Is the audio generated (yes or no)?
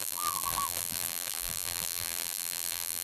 yes